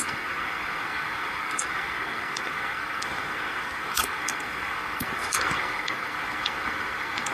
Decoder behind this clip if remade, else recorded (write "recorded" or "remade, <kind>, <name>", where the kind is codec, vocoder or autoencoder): remade, codec, SNAC